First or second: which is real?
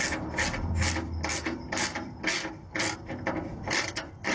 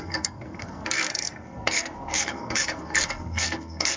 first